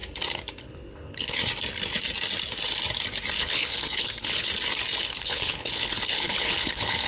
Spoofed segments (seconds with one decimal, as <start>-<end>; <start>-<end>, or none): 0.6-1.4; 3.4-4.5; 5.0-7.1